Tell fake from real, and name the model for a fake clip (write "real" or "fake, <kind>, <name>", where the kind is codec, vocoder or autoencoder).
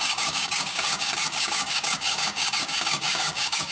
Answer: fake, codec, DAC